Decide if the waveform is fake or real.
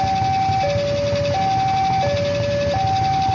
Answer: real